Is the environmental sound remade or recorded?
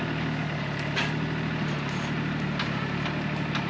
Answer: recorded